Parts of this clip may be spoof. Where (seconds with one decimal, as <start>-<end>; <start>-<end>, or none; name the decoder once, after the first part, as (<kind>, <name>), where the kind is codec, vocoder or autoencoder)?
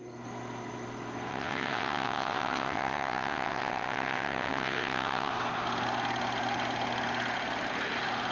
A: 1.3-5.3 (vocoder, WaveNeXt)